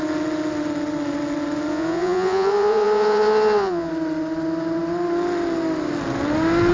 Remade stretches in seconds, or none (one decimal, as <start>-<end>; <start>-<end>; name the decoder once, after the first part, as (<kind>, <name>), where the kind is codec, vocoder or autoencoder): 1.7-3.9 (vocoder, Vocos)